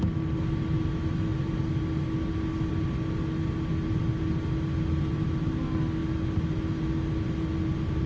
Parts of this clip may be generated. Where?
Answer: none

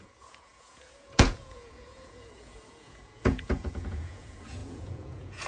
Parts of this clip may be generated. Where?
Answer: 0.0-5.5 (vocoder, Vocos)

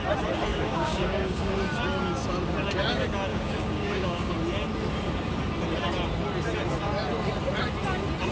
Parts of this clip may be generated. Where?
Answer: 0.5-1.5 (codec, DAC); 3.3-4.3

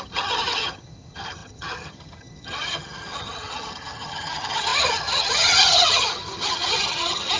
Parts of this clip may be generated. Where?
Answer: 0.0-7.4 (vocoder, HiFi-GAN)

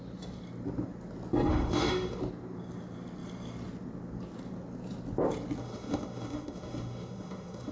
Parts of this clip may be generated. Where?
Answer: 1.5-2.2 (autoencoder, DAC-VAE); 5.6-7.7

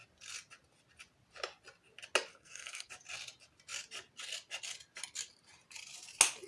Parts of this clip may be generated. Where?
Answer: 2.3-2.9 (codec, SNAC)

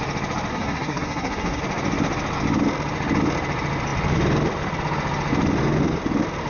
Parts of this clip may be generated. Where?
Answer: 0.5-1.6 (codec, SNAC)